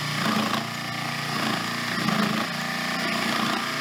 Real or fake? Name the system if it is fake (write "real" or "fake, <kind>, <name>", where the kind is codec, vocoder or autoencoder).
real